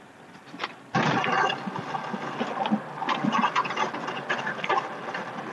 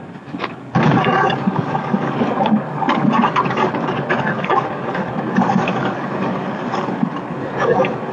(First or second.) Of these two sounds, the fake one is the second